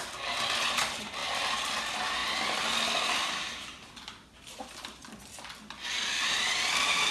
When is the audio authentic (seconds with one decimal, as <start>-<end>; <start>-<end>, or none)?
0.0-7.1